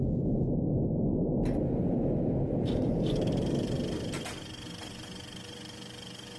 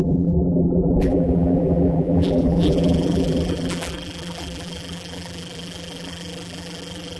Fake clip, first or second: second